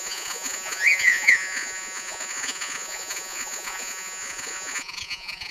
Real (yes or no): no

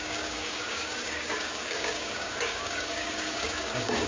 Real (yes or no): no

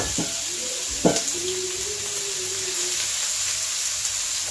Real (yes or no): yes